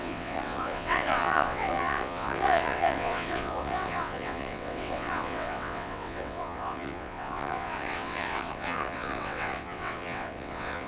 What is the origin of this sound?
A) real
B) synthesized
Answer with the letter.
B